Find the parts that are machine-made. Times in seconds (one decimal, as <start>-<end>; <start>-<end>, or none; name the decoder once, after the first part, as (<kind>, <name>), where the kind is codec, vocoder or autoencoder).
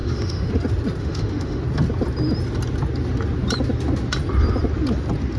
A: 0.0-0.5 (autoencoder, DAC-VAE); 1.0-1.6